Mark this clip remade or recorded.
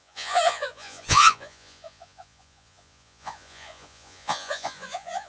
remade